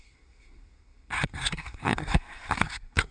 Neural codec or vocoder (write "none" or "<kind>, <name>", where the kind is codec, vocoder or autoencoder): codec, SNAC